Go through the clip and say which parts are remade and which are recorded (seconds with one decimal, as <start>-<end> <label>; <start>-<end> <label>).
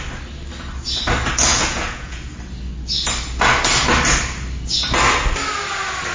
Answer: 0.0-1.5 recorded; 1.5-2.3 remade; 2.3-6.1 recorded